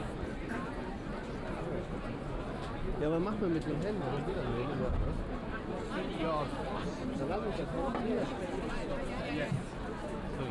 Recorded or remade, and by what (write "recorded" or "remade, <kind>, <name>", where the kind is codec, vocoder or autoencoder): recorded